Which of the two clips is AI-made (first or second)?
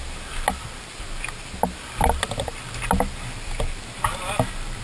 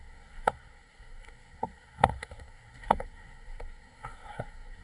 second